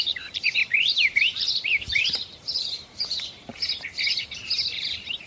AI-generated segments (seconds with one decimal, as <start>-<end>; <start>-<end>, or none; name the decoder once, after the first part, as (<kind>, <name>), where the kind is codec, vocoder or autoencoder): 0.0-3.5 (vocoder, BigVGAN v2); 4.3-5.3